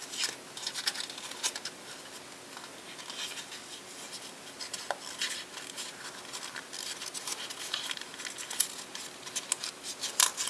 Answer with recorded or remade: recorded